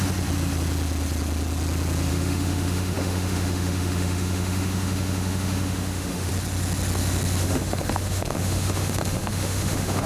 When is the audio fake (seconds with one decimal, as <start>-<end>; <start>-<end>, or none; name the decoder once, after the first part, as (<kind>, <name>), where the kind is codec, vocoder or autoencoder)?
2.1-6.3 (autoencoder, DAC-VAE); 7.4-10.1